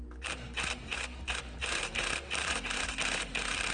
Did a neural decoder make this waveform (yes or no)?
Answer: yes